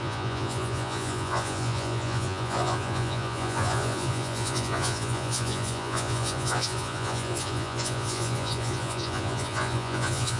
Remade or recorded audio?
remade